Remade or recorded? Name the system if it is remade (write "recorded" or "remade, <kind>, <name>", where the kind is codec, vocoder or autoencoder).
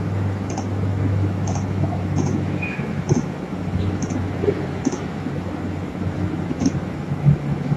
remade, autoencoder, DAC-VAE